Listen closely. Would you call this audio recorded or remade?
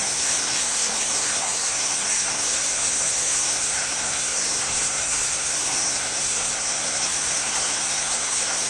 remade